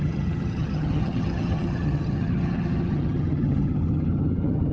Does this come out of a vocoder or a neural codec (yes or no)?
yes